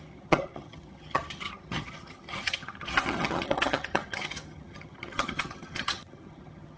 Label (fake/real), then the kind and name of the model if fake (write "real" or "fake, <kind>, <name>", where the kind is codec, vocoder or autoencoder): fake, vocoder, HiFi-GAN